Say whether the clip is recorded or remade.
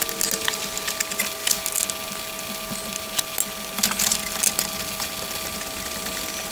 recorded